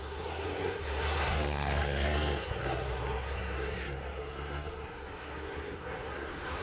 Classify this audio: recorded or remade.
remade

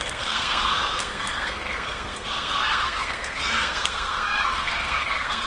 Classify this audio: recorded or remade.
remade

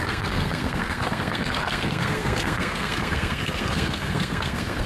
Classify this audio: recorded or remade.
remade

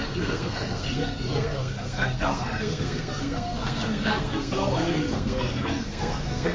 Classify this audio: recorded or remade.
remade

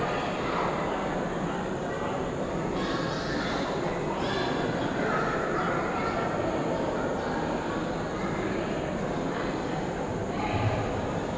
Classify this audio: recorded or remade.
recorded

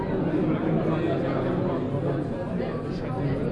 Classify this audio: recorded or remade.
recorded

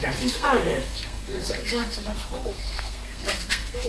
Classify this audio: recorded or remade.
remade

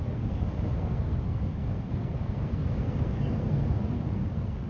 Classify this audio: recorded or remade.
remade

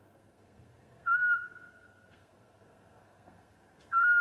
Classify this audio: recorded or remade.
remade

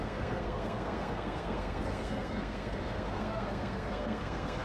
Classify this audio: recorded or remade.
remade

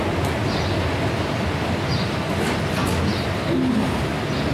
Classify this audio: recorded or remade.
recorded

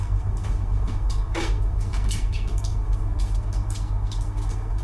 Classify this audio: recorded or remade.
remade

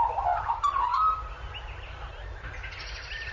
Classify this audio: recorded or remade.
recorded